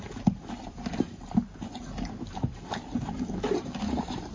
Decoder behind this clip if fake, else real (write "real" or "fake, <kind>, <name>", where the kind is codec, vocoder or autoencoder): real